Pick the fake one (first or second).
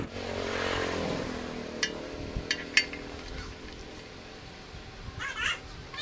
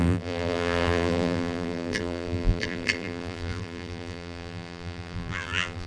second